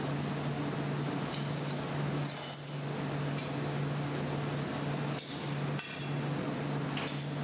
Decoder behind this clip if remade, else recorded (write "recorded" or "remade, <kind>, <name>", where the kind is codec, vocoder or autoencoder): recorded